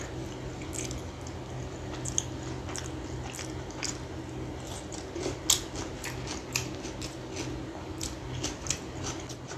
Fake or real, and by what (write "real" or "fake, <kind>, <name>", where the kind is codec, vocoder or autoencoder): real